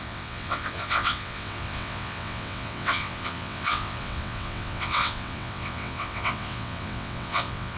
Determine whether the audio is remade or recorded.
remade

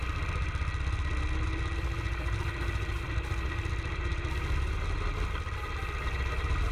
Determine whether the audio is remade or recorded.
recorded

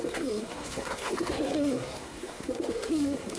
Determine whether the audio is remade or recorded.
remade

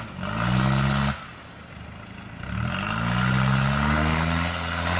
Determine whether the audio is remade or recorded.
recorded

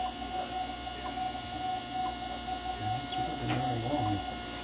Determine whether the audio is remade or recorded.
recorded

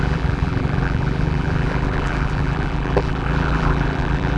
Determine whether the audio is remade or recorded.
remade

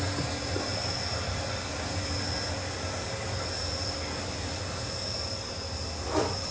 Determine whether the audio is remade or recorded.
recorded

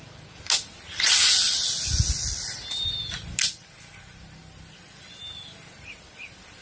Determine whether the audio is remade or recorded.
recorded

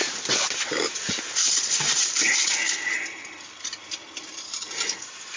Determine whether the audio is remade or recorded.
recorded